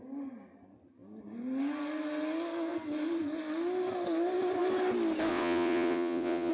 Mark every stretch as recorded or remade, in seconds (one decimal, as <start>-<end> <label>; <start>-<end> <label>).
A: 0.0-5.3 recorded; 5.3-6.5 remade